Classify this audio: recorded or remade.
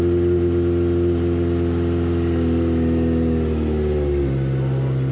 recorded